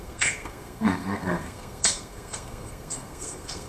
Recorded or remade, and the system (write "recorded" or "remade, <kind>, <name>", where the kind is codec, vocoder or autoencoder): remade, codec, SNAC